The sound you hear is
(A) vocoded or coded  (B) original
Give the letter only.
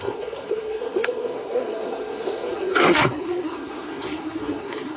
A